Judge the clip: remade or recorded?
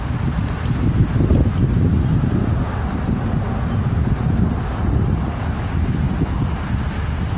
recorded